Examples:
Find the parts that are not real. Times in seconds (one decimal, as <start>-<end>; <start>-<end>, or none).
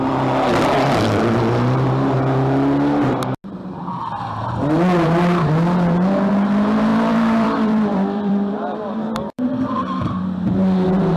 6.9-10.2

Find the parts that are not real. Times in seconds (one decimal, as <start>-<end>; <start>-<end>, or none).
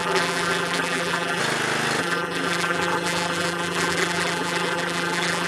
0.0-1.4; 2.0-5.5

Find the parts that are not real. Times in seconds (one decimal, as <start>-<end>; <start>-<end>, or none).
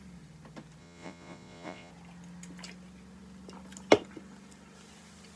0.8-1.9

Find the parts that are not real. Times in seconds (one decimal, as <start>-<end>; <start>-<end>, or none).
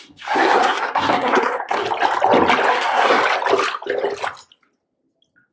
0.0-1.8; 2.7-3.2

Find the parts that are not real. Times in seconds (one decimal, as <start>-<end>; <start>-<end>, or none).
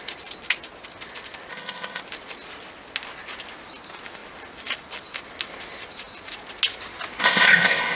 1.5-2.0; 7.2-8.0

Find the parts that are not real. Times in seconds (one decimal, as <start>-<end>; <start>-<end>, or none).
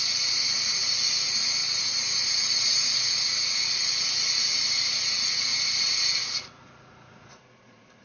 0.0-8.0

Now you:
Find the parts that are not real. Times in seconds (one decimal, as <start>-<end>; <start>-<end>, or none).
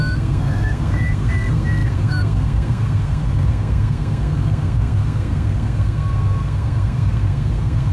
0.0-7.9